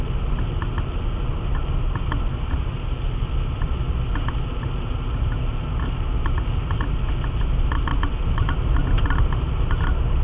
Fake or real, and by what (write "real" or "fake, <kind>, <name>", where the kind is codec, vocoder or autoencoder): real